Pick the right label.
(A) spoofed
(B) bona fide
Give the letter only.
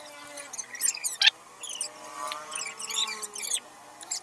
B